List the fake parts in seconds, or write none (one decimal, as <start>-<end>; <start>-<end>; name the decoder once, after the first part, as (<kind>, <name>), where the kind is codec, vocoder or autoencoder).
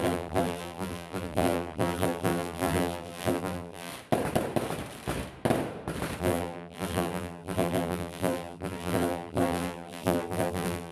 0.0-3.9 (vocoder, BigVGAN v2); 6.2-10.9